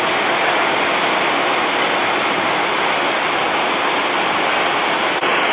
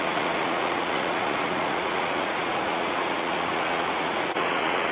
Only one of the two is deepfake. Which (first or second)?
second